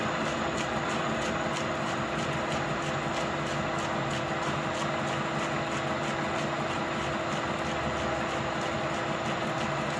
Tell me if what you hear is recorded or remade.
recorded